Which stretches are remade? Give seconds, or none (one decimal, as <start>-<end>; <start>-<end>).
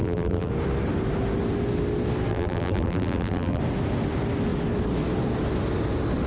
0.0-0.5; 2.3-3.6